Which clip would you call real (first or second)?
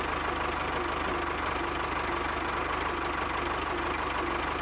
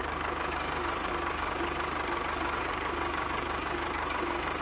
first